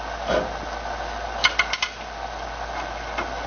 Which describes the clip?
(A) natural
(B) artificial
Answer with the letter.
A